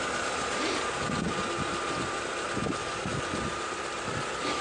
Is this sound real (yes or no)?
yes